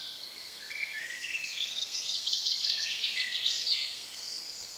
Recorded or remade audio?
remade